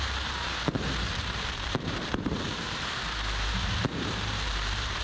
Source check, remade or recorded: remade